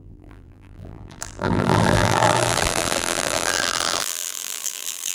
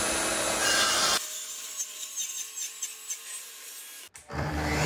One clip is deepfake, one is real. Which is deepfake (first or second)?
first